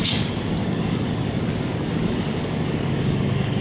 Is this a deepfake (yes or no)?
yes